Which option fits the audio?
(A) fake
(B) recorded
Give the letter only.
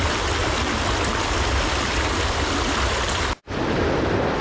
B